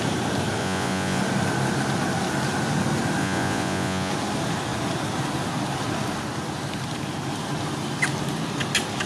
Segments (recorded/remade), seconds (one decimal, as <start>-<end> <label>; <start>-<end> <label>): 0.0-0.6 recorded; 0.6-1.2 remade; 1.2-3.2 recorded; 3.2-4.1 remade; 4.1-9.1 recorded